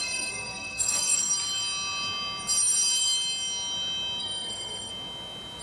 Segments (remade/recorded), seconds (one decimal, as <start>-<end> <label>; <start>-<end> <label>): 0.0-1.3 remade; 1.3-4.2 recorded; 4.2-4.9 remade; 4.9-5.6 recorded